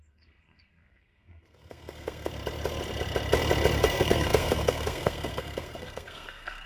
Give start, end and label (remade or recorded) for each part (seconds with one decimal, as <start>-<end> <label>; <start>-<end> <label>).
0.0-2.3 remade; 2.3-3.8 recorded; 3.8-6.7 remade